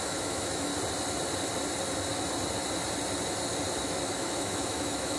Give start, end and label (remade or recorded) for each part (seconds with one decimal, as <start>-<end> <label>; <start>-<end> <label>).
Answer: 0.0-0.7 remade; 0.7-3.8 recorded; 3.8-5.2 remade